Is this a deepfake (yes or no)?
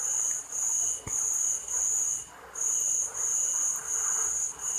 no